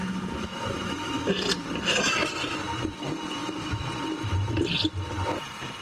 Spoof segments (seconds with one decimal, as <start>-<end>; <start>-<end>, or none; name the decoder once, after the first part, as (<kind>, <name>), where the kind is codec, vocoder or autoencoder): 0.0-1.3 (autoencoder, DAC-VAE); 3.4-3.9